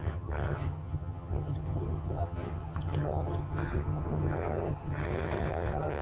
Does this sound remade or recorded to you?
remade